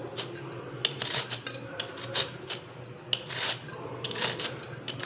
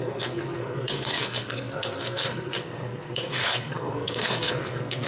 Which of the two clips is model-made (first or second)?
second